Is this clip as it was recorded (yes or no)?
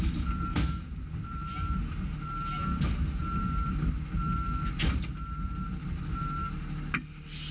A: yes